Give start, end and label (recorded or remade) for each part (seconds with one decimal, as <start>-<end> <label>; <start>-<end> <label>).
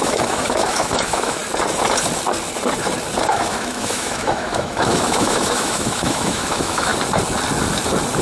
0.0-1.4 remade; 1.4-3.3 recorded; 3.3-6.9 remade; 6.9-8.2 recorded